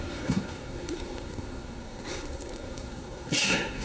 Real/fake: fake